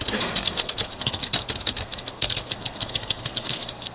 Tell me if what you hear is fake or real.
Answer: fake